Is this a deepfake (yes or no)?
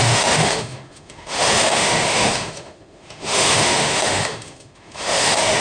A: yes